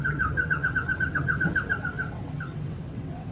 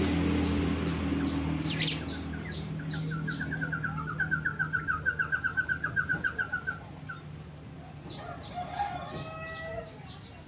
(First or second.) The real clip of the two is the second